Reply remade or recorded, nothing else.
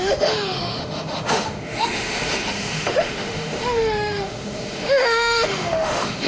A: remade